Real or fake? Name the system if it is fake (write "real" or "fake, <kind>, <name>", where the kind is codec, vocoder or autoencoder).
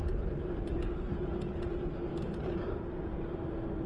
real